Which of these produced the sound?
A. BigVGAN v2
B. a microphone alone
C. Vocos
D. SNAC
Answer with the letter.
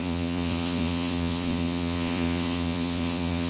C